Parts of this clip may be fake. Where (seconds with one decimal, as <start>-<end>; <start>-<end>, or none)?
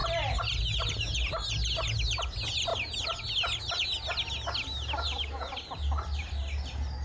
none